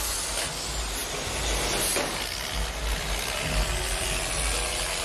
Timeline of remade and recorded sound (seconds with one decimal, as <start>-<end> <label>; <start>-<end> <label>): 0.0-5.0 recorded